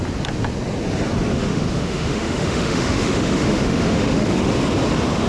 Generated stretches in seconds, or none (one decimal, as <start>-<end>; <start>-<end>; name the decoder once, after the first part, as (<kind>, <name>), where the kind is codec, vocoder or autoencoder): 1.3-4.5 (autoencoder, DAC-VAE)